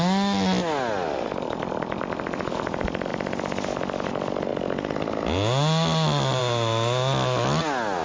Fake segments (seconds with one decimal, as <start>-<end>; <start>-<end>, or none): none